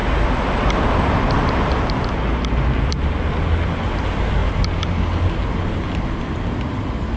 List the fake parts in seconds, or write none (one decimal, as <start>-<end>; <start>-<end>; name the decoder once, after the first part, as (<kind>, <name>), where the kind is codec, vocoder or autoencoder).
none